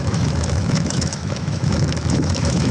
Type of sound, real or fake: fake